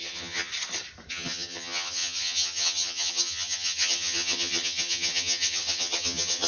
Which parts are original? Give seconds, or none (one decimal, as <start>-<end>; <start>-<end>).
0.5-1.1

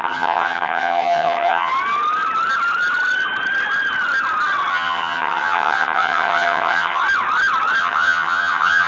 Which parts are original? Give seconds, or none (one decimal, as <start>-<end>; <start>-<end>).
1.7-4.7; 7.0-7.8

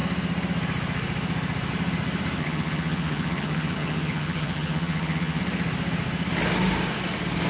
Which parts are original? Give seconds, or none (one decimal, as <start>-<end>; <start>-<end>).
0.0-2.4; 5.4-7.5

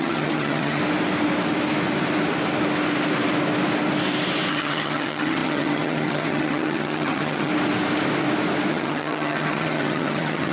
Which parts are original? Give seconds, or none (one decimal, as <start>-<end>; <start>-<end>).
0.8-4.5; 7.5-8.7